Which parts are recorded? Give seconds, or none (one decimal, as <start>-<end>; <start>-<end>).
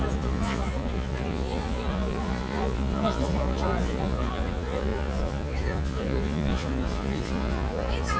none